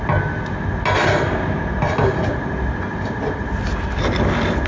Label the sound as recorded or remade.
recorded